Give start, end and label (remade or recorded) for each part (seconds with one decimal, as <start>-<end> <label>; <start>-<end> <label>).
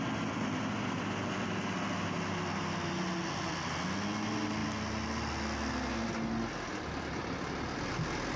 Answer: 0.0-8.4 recorded